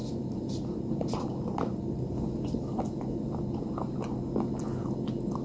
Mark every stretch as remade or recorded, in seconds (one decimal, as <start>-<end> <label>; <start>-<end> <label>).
0.0-2.1 remade; 2.1-5.4 recorded